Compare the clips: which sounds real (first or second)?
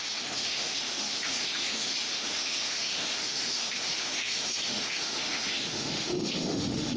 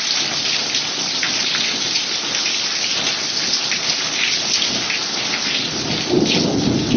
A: second